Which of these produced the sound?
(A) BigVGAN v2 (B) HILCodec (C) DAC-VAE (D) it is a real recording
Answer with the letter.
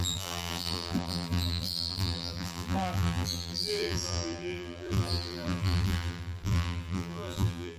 A